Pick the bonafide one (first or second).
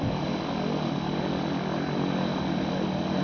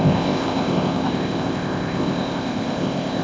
first